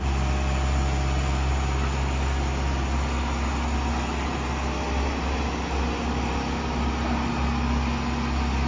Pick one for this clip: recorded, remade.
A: recorded